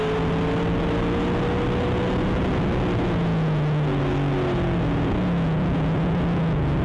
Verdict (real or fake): real